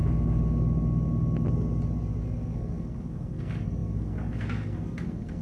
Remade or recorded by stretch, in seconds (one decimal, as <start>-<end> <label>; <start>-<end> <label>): 0.0-2.2 recorded; 2.2-5.4 remade